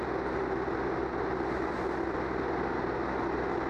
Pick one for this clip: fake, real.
real